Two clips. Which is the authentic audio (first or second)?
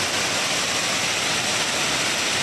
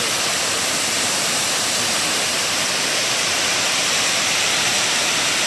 first